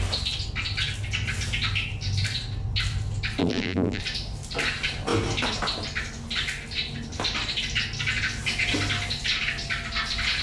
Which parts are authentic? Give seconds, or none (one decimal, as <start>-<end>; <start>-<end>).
0.0-3.4; 4.0-10.4